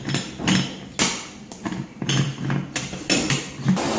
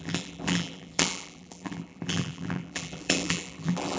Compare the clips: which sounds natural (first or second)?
first